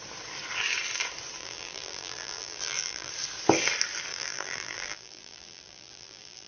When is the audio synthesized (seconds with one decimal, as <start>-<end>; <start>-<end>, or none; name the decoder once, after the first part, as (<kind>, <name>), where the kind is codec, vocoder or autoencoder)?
1.4-3.1 (vocoder, BigVGAN v2); 4.1-6.5